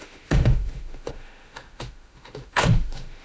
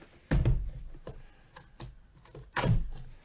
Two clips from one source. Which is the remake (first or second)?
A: first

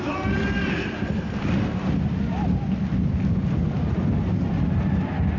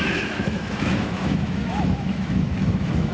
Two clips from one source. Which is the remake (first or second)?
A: second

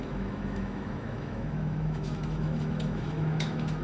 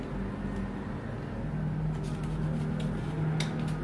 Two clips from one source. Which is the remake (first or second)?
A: first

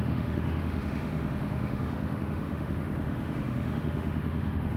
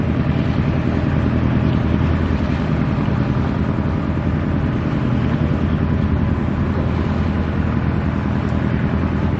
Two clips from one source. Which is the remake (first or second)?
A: first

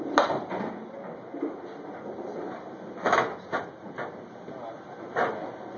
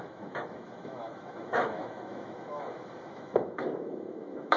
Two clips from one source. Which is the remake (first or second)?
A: second